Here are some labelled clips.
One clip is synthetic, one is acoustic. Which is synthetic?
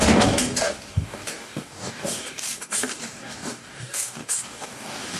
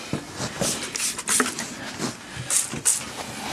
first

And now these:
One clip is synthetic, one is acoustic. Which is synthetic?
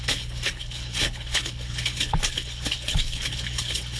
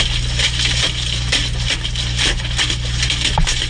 first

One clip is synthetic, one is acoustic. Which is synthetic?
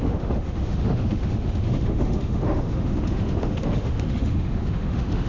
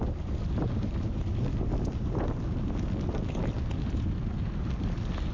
first